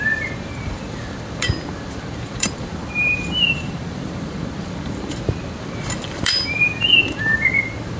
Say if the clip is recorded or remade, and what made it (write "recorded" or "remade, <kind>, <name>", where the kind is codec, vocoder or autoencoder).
remade, vocoder, BigVGAN v2